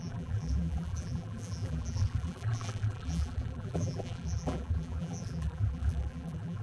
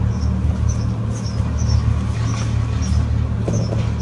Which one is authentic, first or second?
second